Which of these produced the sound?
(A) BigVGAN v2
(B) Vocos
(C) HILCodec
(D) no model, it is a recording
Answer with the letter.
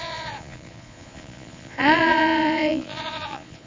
B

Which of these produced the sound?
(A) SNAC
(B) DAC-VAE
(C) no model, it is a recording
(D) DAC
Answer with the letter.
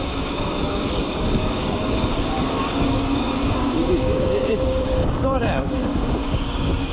D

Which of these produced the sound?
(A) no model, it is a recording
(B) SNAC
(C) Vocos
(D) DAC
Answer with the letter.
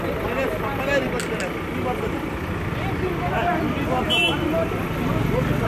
A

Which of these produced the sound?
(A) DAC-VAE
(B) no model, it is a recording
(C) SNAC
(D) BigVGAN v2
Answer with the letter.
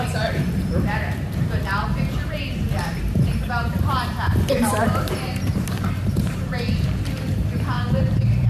D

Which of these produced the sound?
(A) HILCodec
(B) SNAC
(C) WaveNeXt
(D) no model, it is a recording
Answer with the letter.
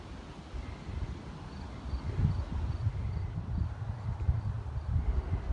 D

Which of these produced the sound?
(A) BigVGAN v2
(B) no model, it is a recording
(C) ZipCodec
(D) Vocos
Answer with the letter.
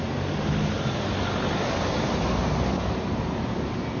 B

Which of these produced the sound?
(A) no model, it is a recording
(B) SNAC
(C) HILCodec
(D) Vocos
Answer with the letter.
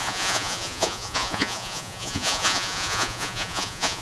D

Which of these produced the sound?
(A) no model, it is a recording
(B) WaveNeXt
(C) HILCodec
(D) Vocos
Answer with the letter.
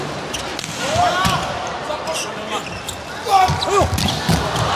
A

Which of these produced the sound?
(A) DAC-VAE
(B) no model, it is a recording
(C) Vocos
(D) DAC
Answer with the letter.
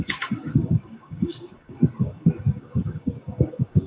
D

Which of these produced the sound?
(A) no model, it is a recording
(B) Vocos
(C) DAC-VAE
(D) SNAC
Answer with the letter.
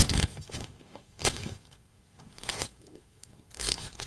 D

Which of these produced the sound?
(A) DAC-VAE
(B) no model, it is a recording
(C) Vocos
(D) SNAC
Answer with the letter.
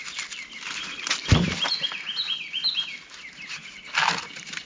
B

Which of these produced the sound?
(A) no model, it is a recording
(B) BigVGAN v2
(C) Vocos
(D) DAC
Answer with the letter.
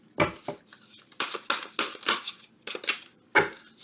A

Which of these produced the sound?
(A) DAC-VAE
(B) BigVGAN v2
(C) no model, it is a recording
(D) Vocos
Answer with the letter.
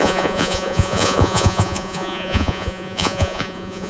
D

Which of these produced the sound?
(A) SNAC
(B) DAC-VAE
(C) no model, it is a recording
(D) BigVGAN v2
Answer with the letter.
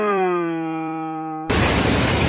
D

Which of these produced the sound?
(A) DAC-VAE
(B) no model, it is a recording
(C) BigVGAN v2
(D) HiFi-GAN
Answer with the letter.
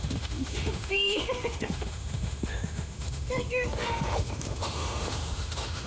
A